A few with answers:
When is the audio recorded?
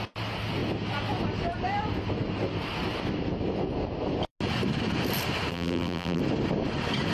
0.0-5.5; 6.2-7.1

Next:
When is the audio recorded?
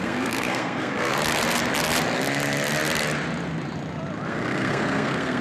1.1-4.3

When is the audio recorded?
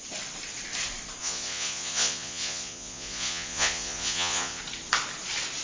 0.0-1.2; 4.6-5.6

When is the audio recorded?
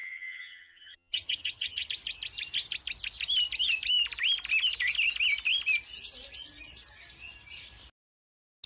1.9-8.7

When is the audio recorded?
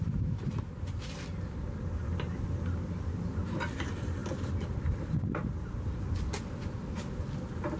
0.0-7.8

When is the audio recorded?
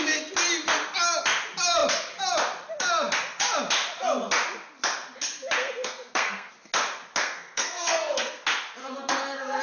0.0-5.6; 6.5-7.2; 8.4-8.8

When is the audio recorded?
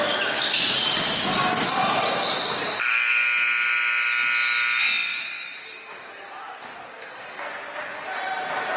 0.0-6.9; 7.5-8.8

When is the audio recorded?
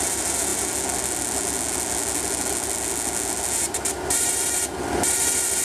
0.0-5.6